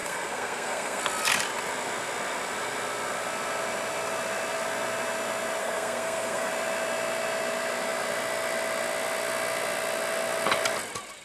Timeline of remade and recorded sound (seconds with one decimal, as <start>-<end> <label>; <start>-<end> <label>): 0.0-1.0 remade; 1.0-5.6 recorded; 5.6-6.5 remade; 6.5-11.2 recorded